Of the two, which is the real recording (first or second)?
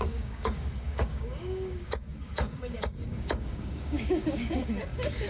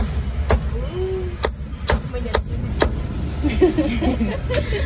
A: second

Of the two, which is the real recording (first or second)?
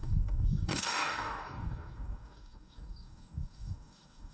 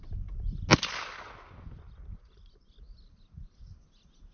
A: second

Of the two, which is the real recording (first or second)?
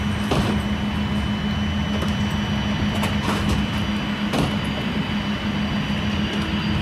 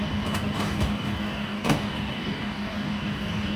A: first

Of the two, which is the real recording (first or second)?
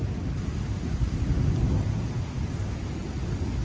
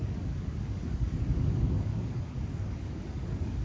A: first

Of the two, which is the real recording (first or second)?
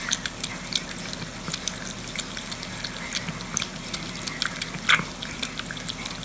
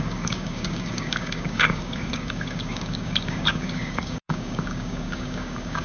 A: first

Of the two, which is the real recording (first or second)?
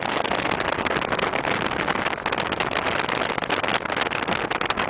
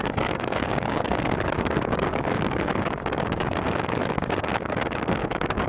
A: first